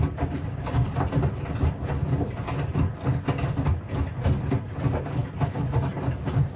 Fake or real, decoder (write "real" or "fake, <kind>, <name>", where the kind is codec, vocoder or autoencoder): real